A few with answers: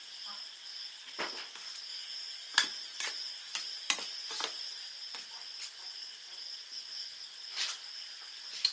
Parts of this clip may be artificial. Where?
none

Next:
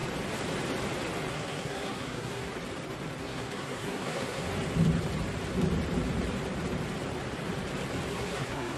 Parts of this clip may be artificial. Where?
1.3-2.5 (codec, SNAC); 3.2-4.5; 8.1-8.8

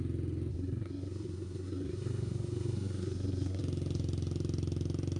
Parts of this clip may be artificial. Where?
0.5-3.6 (codec, SNAC)

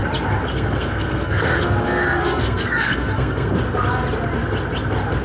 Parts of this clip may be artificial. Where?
0.5-3.6 (codec, SNAC)

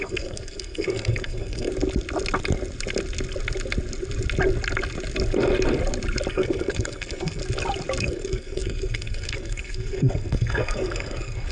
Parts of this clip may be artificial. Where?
0.0-1.7 (codec, SNAC); 6.3-7.4; 8.0-11.5

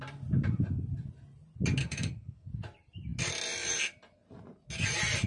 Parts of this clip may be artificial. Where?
1.8-2.5 (codec, SNAC)